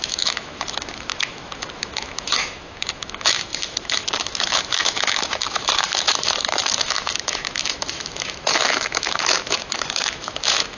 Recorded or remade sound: remade